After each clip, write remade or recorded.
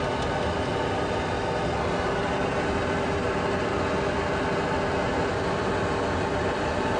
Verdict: recorded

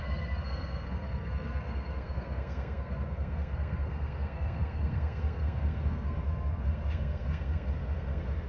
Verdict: remade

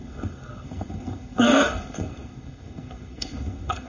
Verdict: remade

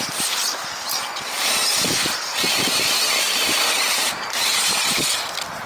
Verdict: recorded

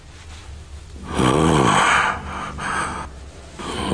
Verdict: recorded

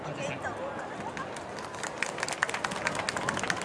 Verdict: recorded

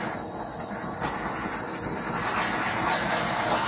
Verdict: recorded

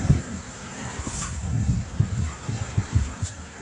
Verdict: remade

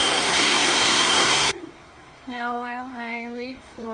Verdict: remade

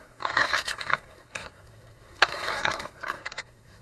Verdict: remade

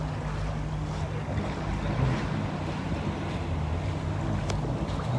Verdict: recorded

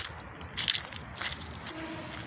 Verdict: recorded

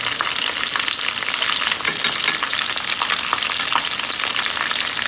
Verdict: recorded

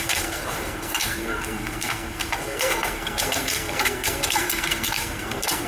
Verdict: remade